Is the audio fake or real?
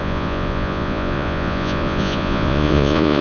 fake